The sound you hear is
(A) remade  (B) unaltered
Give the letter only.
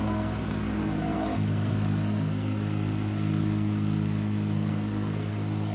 A